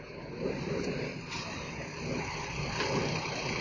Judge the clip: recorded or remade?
remade